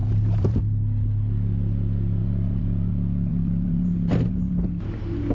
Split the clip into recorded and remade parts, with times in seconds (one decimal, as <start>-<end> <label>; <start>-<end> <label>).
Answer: 0.0-0.6 remade; 0.6-2.2 recorded; 2.2-2.9 remade; 2.9-3.3 recorded; 3.3-4.5 remade; 4.5-5.3 recorded